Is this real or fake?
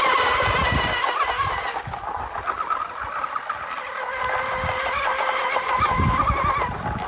real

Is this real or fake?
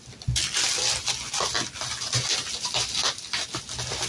real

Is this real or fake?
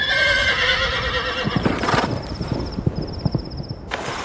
real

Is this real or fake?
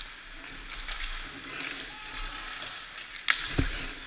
real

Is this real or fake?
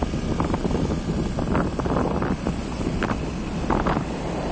real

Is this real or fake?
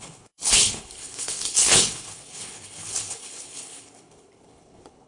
fake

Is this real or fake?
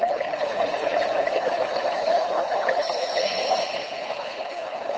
fake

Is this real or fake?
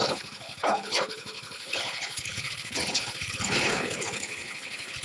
fake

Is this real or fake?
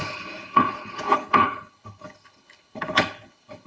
fake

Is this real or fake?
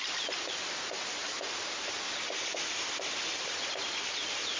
real